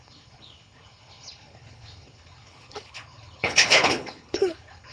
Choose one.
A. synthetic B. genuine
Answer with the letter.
A